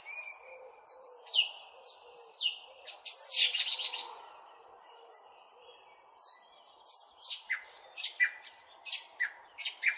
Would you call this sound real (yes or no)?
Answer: yes